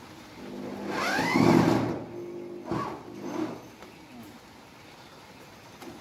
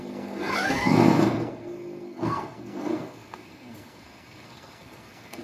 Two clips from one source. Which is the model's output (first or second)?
second